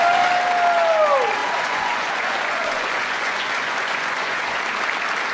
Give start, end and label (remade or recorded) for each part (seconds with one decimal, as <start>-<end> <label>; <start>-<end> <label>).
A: 0.0-1.4 recorded; 1.4-4.6 remade; 4.6-5.3 recorded